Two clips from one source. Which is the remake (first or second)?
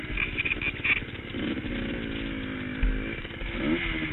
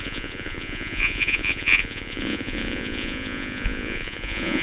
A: second